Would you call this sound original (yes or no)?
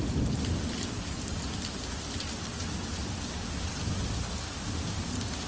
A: no